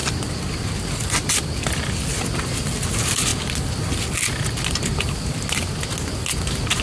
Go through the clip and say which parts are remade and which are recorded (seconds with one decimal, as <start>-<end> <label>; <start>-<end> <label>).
0.0-6.8 recorded